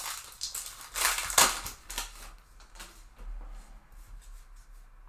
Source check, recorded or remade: recorded